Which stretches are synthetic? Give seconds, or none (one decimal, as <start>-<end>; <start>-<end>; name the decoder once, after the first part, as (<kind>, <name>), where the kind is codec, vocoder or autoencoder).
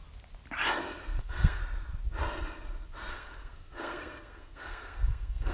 1.2-1.6 (codec, SNAC); 3.1-5.5